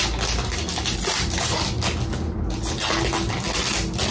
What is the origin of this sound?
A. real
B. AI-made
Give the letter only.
A